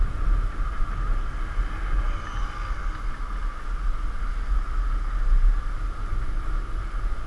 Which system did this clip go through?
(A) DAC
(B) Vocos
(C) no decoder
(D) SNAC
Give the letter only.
C